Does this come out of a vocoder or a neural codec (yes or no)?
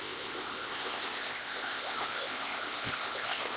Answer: yes